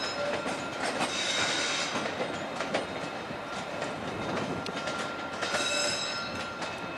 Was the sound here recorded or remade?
recorded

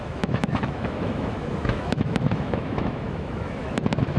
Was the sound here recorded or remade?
remade